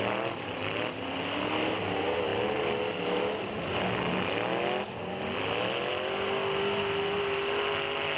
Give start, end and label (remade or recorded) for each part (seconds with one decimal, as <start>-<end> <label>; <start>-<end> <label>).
0.0-8.2 recorded